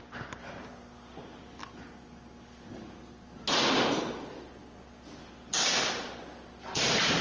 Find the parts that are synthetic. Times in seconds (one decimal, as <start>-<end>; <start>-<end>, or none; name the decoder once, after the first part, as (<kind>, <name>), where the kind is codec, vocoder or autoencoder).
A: none